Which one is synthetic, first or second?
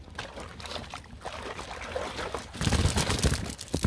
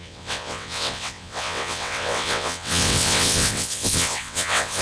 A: second